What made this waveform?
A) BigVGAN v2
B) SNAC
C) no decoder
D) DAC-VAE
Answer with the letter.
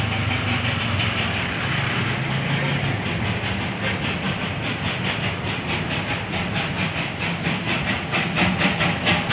C